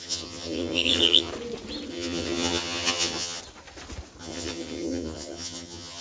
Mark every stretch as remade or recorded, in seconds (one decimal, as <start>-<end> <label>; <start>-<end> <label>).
0.0-1.3 remade; 1.3-1.9 recorded; 1.9-3.4 remade; 3.4-4.2 recorded; 4.2-6.0 remade